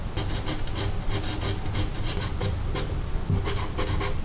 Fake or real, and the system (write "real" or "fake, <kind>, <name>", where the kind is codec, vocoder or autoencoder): real